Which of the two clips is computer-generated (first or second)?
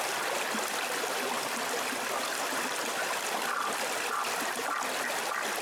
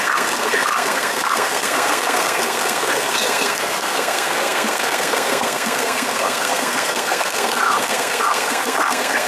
second